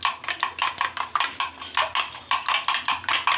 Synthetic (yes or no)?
no